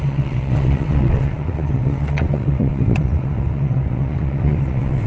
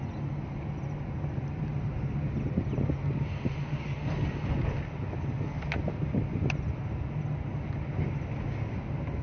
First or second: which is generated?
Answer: first